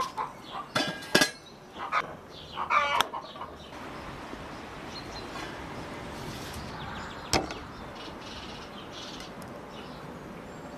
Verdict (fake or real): real